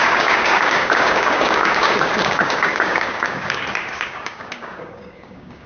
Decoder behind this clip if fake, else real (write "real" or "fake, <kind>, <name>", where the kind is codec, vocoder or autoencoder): fake, codec, DAC